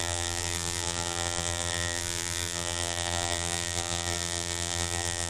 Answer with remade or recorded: remade